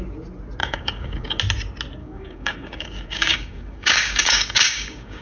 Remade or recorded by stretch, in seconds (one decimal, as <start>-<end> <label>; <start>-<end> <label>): 0.0-0.6 recorded; 0.6-1.4 remade; 1.4-2.0 recorded; 2.0-5.2 remade